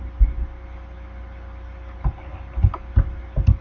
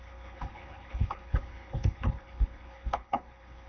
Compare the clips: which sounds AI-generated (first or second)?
second